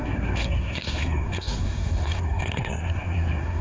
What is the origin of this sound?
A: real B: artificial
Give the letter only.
B